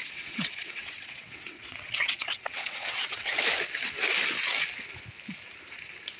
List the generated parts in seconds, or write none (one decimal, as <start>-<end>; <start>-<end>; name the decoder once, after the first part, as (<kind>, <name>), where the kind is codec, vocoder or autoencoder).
0.0-3.4 (vocoder, WaveNeXt)